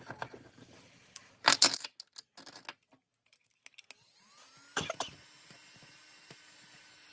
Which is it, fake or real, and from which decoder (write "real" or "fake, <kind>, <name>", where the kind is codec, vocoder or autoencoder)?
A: real